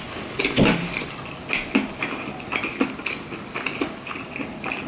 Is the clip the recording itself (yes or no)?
yes